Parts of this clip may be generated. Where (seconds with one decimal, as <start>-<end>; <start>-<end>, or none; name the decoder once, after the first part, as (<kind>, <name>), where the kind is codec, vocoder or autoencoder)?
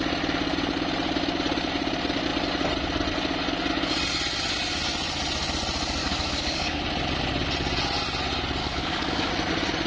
6.0-6.8 (codec, DAC); 8.6-9.3